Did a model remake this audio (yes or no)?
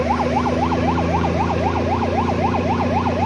no